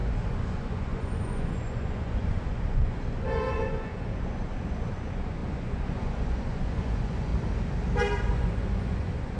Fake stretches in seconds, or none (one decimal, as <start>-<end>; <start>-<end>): 0.0-7.3; 8.2-9.4